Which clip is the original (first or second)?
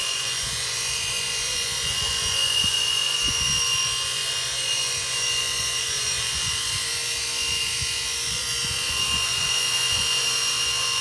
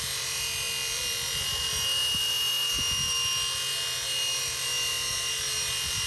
second